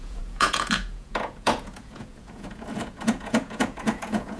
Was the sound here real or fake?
fake